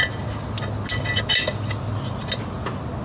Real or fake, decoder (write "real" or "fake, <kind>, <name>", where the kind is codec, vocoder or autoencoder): real